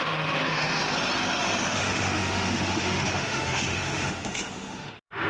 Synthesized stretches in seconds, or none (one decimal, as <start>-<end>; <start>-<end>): 0.0-0.8; 1.7-5.3